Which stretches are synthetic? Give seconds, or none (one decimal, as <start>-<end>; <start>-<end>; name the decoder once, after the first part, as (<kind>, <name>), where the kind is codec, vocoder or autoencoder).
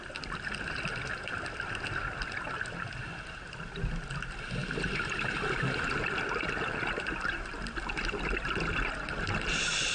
none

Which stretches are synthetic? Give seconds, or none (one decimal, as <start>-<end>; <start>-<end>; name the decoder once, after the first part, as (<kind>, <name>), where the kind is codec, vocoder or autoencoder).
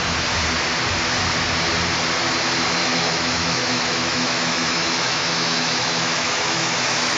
2.8-7.2 (autoencoder, DAC-VAE)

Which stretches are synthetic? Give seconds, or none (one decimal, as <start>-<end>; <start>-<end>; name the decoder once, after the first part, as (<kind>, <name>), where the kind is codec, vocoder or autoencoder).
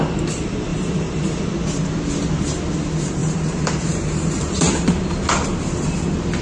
0.7-2.1 (vocoder, BigVGAN v2); 3.2-4.7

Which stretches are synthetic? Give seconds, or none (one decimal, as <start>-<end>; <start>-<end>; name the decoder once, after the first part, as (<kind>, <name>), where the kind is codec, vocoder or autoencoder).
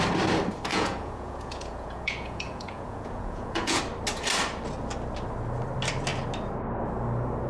0.7-3.8 (vocoder, Vocos)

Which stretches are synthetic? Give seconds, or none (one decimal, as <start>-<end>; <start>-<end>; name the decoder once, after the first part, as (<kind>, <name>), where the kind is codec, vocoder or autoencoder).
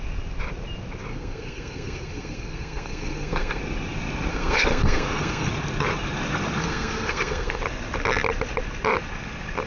1.1-3.6 (codec, SNAC); 4.3-5.5; 6.6-7.6